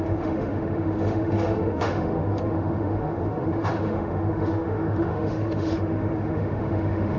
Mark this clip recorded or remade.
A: remade